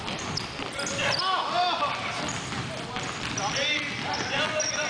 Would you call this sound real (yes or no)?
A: yes